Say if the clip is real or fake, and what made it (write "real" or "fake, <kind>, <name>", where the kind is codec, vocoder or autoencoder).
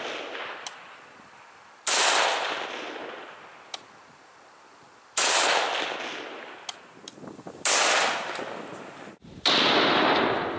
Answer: real